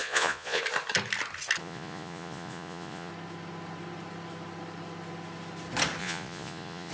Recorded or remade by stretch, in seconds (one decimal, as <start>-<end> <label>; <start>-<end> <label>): 0.0-0.6 remade; 0.6-1.6 recorded; 1.6-3.1 remade; 3.1-6.0 recorded; 6.0-6.9 remade